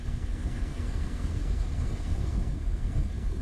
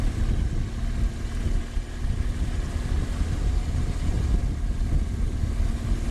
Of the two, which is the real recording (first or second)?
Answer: second